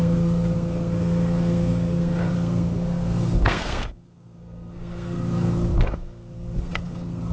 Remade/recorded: remade